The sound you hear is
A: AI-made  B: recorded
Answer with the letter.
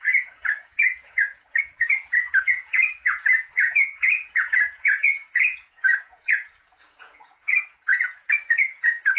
A